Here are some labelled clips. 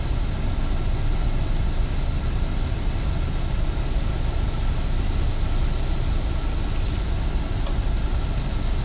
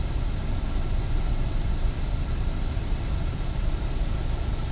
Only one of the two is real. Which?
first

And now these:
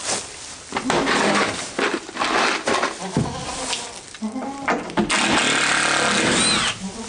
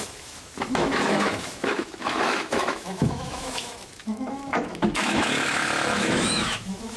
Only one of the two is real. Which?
first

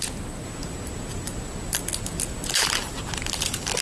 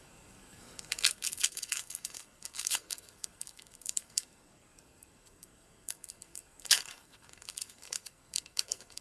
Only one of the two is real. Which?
first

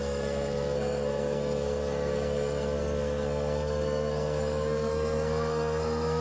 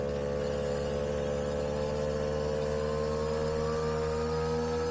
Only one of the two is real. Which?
second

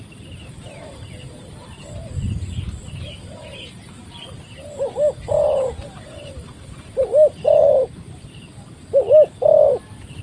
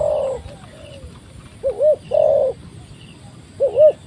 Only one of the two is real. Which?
second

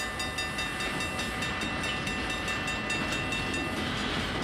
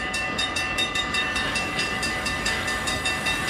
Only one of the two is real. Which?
first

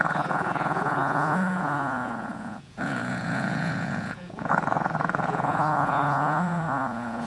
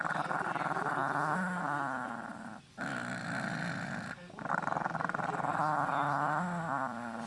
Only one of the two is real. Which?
second